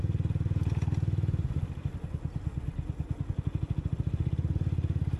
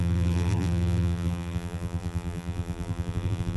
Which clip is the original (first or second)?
first